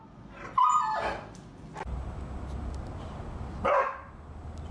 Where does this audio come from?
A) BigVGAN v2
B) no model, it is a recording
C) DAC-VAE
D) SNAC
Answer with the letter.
B